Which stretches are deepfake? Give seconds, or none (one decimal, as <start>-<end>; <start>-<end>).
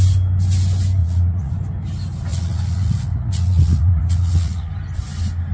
1.0-1.5; 2.3-4.7